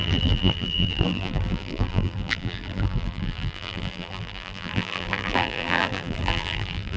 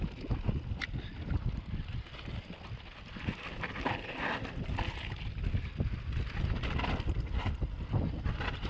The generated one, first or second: first